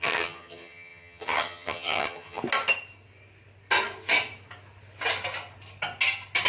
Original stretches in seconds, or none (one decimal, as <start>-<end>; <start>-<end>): 2.4-6.5